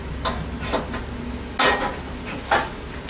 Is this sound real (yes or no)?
yes